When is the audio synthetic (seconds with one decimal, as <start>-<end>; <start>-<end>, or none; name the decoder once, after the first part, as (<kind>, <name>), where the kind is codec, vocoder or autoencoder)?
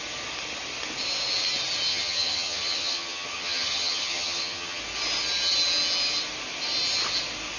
1.9-4.8 (vocoder, HiFi-GAN)